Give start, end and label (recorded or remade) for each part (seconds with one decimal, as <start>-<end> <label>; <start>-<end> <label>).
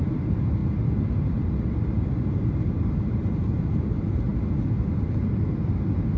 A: 0.0-0.6 remade; 0.6-1.1 recorded; 1.1-4.3 remade; 4.3-5.6 recorded; 5.6-6.2 remade